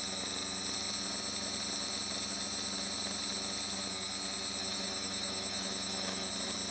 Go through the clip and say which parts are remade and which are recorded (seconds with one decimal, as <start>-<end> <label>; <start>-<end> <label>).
0.0-4.6 recorded; 4.6-6.3 remade; 6.3-6.7 recorded